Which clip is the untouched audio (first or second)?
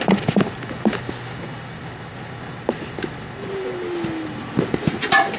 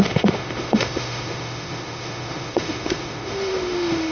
first